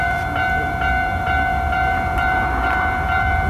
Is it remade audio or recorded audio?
remade